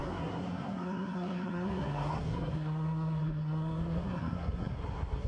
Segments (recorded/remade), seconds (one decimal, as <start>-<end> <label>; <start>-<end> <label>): 0.0-5.3 remade